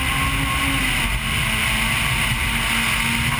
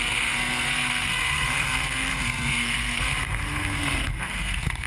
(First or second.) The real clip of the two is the first